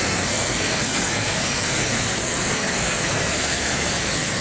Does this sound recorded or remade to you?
remade